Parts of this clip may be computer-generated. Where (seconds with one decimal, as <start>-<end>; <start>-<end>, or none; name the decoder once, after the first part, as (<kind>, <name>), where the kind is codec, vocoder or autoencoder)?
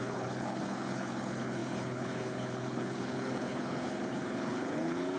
0.0-5.2 (codec, HILCodec)